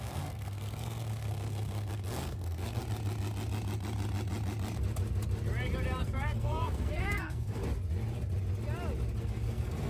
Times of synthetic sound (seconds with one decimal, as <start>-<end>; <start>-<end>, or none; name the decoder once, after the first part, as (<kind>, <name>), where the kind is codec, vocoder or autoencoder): 0.0-2.8 (codec, SNAC); 6.0-7.6; 9.2-9.9